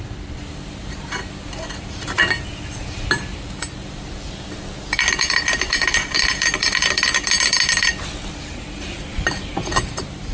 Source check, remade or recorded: remade